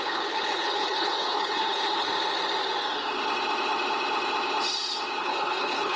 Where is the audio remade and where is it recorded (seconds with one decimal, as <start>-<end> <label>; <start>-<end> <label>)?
0.0-2.1 remade; 2.1-5.2 recorded; 5.2-6.0 remade